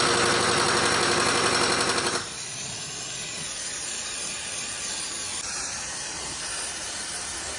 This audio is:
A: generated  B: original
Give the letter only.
B